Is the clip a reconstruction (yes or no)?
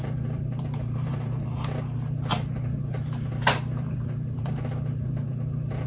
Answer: yes